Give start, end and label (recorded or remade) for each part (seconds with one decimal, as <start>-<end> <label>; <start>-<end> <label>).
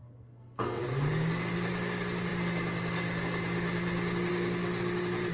0.0-0.8 remade; 0.8-5.3 recorded